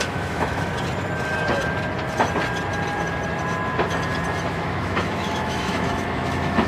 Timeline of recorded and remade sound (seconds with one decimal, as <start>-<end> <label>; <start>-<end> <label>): 0.0-0.7 remade; 0.7-4.5 recorded; 4.5-6.7 remade

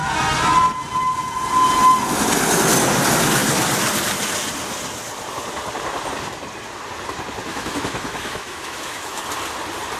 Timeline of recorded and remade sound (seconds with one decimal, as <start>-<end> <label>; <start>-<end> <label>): 0.0-7.5 recorded; 7.5-9.2 remade; 9.2-10.0 recorded

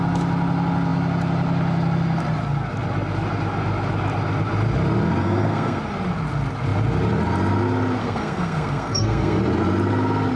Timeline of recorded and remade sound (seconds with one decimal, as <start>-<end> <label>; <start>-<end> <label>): 0.0-5.2 recorded; 5.2-5.8 remade; 5.8-8.0 recorded; 8.0-9.4 remade; 9.4-10.4 recorded

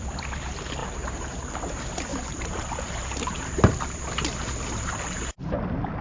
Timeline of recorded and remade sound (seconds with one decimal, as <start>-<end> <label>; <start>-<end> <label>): 0.0-0.8 recorded; 0.8-1.4 remade; 1.4-2.1 recorded; 2.1-5.4 remade; 5.4-6.0 recorded

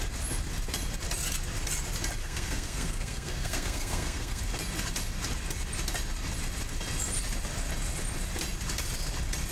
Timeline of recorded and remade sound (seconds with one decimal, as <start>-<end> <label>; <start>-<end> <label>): 0.0-2.2 recorded; 2.2-4.4 remade; 4.4-9.5 recorded